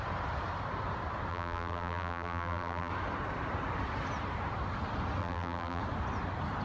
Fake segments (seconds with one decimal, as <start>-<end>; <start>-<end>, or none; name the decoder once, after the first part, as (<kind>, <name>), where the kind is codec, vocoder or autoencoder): 1.3-2.9 (vocoder, BigVGAN v2); 5.2-5.8